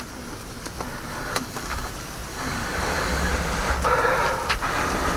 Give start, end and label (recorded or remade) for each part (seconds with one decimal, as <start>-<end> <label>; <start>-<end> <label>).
0.0-1.1 recorded; 1.1-1.9 remade; 1.9-2.3 recorded; 2.3-3.3 remade; 3.3-5.2 recorded

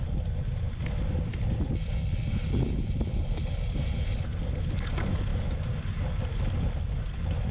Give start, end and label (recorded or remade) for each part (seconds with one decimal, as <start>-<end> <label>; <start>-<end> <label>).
0.0-7.5 recorded

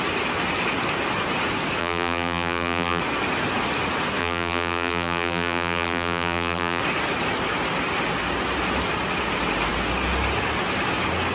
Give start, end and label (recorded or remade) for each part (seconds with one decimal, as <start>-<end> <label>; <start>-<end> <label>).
0.0-1.8 recorded; 1.8-3.0 remade; 3.0-4.2 recorded; 4.2-6.8 remade; 6.8-11.3 recorded

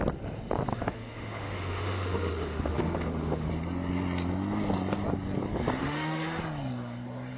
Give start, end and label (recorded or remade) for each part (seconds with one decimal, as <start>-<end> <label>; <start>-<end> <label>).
0.0-0.7 recorded; 0.7-3.5 remade; 3.5-5.8 recorded; 5.8-6.4 remade; 6.4-7.4 recorded

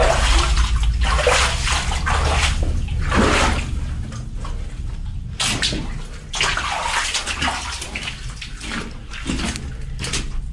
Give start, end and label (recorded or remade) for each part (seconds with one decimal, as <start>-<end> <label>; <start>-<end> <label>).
0.0-10.5 recorded